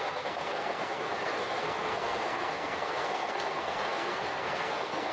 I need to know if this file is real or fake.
fake